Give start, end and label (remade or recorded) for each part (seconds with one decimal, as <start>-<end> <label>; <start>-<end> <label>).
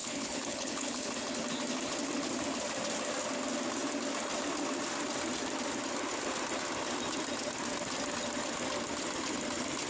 0.0-1.1 remade; 1.1-9.9 recorded